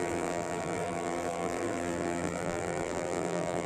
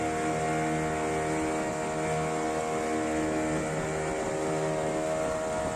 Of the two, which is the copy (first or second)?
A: first